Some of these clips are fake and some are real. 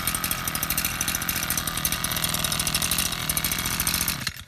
real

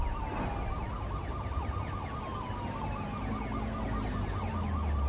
real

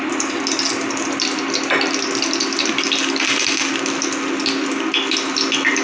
real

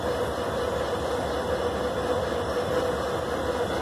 real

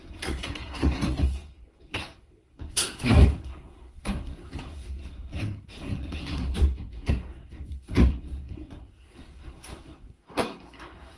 fake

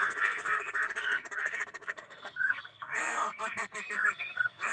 fake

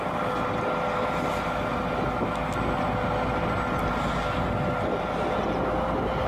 real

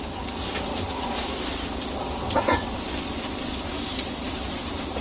real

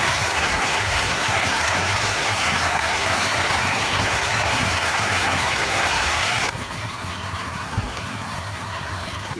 fake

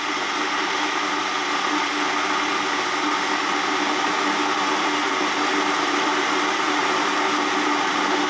real